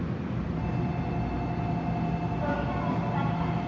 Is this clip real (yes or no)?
yes